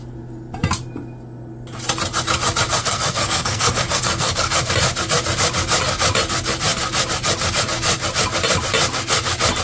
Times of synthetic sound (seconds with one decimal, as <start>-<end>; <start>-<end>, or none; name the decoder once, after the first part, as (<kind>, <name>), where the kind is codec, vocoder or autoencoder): 2.8-4.7 (codec, SNAC)